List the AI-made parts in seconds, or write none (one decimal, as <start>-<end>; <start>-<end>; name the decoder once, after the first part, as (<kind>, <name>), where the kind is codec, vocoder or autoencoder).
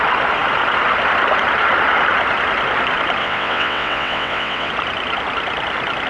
3.2-4.7 (vocoder, WaveNeXt)